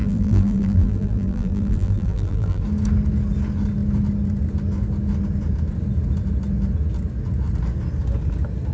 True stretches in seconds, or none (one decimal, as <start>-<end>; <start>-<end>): 2.6-8.7